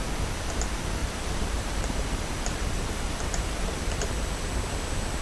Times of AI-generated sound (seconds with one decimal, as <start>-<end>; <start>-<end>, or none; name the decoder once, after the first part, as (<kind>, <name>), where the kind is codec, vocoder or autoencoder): 1.0-4.1 (vocoder, BigVGAN v2)